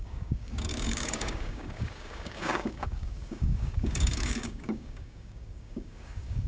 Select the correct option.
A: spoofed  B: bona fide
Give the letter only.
A